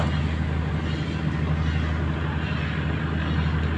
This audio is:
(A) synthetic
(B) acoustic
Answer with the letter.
B